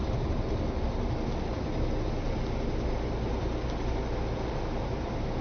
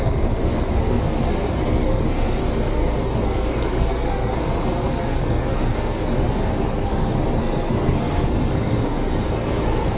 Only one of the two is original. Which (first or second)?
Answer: first